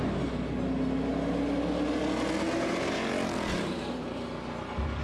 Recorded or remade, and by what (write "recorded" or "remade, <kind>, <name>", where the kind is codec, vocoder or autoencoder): recorded